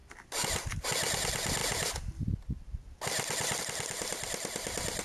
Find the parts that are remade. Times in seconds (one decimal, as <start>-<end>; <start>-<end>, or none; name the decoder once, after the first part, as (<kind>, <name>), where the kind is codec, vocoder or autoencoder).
none